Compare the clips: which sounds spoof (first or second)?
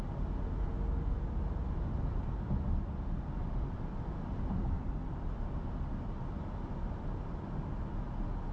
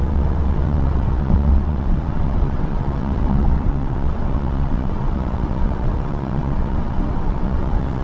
second